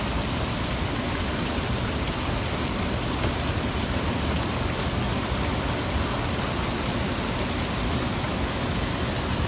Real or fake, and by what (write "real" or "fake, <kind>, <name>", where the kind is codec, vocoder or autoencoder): real